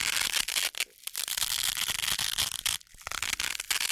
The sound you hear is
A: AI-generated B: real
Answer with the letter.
B